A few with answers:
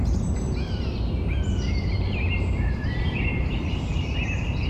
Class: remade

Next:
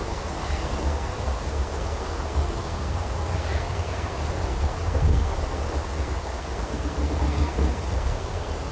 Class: remade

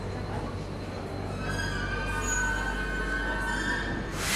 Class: recorded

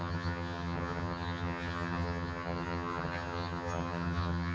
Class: remade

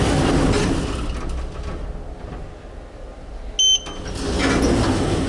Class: recorded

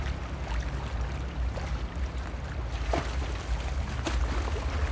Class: recorded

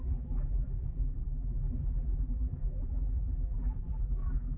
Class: remade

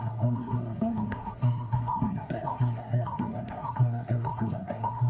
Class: remade